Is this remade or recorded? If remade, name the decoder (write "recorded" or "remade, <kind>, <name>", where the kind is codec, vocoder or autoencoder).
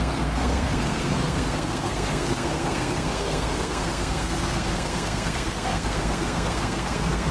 remade, codec, SNAC